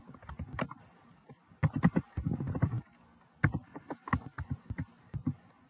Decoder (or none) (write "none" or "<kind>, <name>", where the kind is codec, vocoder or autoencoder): none